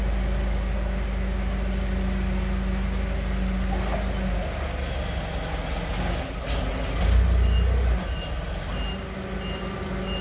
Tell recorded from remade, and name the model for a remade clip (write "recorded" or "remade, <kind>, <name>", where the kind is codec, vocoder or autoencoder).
recorded